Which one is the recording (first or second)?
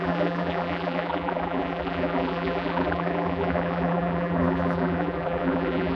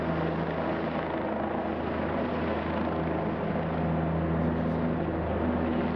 second